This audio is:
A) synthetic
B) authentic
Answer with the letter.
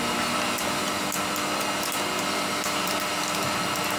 B